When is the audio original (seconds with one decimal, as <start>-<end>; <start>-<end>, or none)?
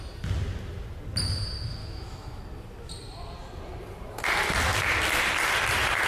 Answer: 0.0-1.8; 2.4-6.1